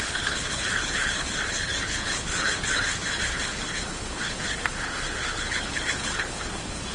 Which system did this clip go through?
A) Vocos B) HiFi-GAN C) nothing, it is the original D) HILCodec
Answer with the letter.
D